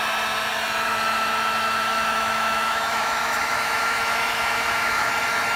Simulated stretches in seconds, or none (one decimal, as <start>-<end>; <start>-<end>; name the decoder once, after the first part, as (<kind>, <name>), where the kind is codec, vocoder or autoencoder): 1.9-5.1 (autoencoder, DAC-VAE)